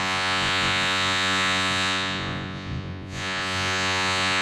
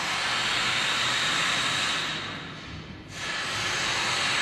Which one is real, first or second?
second